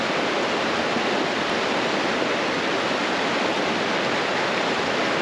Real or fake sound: real